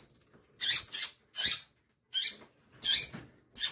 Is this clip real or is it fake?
real